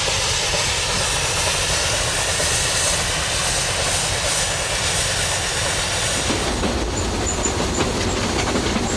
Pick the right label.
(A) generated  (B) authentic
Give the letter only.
B